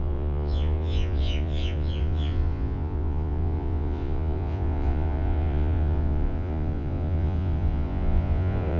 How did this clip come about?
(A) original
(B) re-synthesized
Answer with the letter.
B